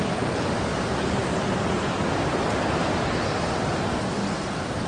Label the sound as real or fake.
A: real